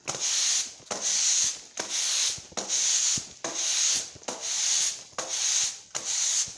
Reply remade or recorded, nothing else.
recorded